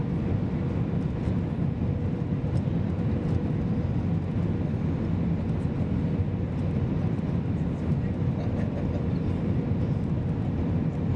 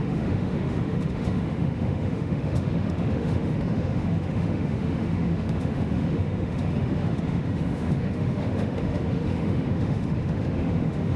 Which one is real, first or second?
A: first